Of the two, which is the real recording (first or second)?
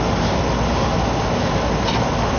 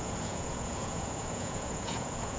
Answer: first